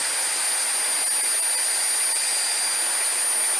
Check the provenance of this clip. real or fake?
real